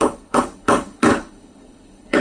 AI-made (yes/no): yes